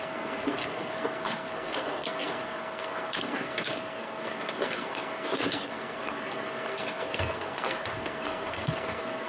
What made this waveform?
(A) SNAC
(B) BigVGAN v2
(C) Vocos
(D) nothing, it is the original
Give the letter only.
A